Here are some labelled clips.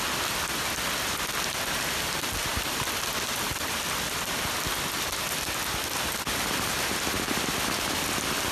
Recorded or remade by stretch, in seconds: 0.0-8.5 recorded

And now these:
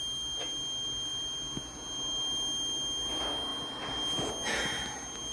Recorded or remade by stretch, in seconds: 0.0-5.3 recorded

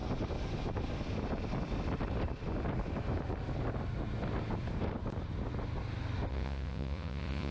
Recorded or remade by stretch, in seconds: 0.0-6.3 recorded; 6.3-7.5 remade

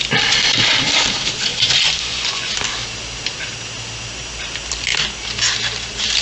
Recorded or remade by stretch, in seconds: 0.0-1.5 recorded; 1.5-2.5 remade; 2.5-6.2 recorded

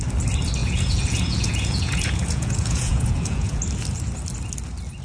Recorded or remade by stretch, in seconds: 0.0-0.6 recorded; 0.6-3.6 remade; 3.6-5.0 recorded